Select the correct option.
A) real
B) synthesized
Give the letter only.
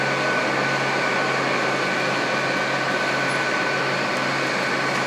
A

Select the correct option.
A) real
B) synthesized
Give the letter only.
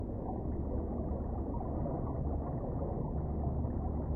A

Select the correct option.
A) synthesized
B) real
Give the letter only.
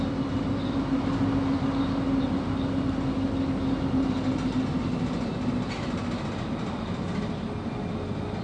B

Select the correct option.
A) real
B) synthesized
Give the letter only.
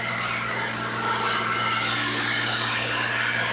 B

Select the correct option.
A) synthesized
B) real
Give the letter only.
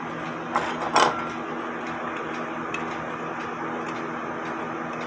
B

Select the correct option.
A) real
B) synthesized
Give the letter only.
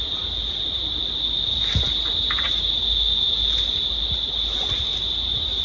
A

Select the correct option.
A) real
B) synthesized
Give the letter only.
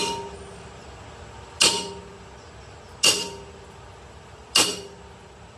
A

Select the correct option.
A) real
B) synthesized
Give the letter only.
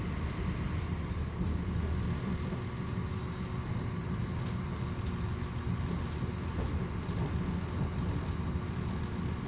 A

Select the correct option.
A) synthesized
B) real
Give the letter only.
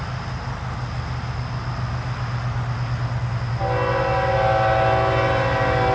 B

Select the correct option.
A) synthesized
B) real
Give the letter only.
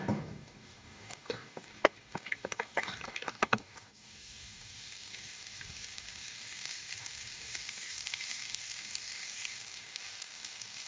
A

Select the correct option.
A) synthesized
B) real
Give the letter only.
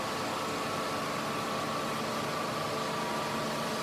B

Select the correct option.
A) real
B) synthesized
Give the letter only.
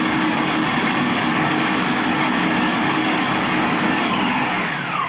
B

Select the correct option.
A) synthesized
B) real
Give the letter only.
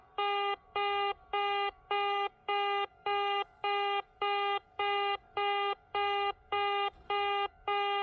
A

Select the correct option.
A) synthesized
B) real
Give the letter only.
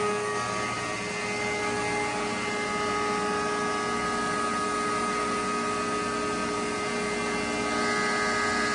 B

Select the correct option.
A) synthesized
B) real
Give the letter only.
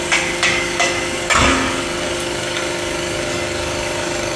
A